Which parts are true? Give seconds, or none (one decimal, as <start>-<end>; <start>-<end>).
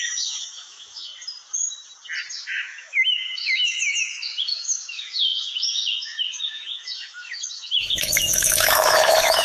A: 1.1-2.3